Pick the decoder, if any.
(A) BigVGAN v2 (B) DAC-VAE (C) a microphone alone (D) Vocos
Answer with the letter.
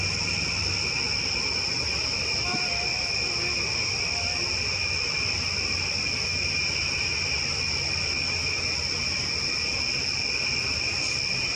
C